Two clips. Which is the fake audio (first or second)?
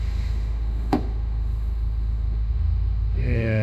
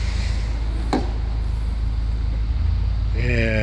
first